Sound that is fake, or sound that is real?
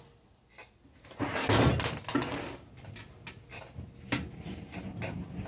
real